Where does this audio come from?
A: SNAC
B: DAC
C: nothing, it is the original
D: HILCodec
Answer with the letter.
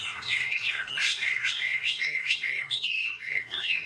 A